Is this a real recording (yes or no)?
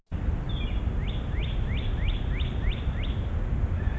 yes